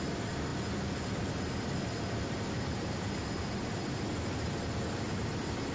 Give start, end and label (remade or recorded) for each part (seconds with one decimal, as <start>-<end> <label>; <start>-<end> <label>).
0.0-5.7 recorded